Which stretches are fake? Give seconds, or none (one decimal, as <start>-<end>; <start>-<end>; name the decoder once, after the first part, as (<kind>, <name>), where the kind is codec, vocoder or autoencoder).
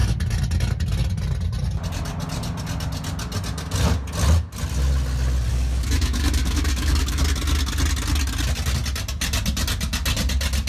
5.5-7.2 (codec, DAC)